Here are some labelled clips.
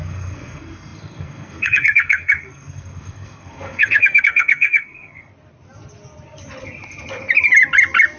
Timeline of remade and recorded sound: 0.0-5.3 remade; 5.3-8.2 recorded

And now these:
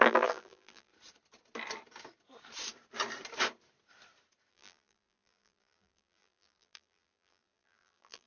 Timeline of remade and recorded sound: 0.0-0.9 remade; 0.9-4.5 recorded; 4.5-8.3 remade

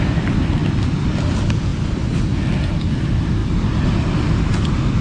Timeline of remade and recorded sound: 0.0-3.4 remade; 3.4-5.0 recorded